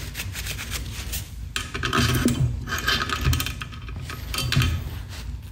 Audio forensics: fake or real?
real